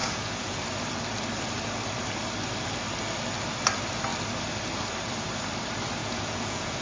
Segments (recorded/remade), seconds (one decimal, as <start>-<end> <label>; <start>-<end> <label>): 0.0-0.6 remade; 0.6-6.0 recorded; 6.0-6.8 remade

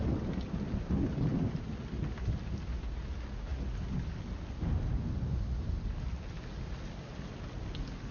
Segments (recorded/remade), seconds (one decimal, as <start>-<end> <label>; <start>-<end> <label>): 0.0-8.1 recorded

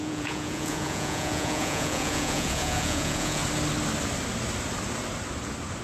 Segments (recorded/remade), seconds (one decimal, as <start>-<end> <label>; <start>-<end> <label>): 0.0-3.4 remade; 3.4-5.8 recorded

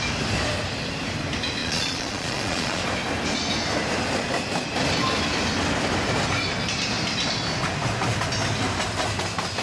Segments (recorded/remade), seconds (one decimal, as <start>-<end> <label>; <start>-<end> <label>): 0.0-1.6 recorded; 1.6-2.8 remade; 2.8-9.6 recorded